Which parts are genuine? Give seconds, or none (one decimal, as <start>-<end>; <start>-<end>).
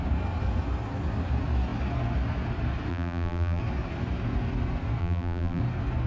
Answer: 0.0-2.9; 3.6-5.0; 5.6-6.1